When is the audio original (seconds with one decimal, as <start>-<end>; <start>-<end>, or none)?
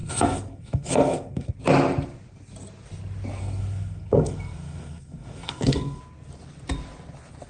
1.5-3.4; 6.0-7.5